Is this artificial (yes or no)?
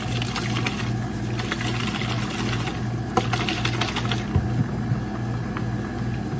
no